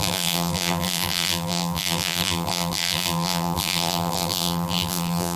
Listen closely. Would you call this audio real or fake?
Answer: fake